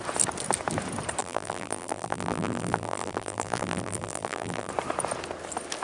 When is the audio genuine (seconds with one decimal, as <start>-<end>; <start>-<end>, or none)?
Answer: 0.0-1.2; 4.7-5.8